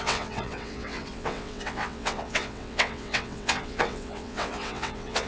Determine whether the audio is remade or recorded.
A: remade